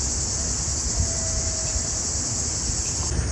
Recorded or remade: recorded